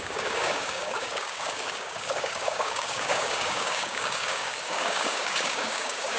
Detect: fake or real fake